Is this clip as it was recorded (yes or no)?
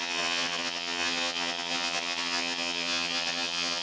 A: no